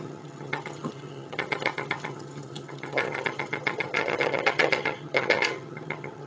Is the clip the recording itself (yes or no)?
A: no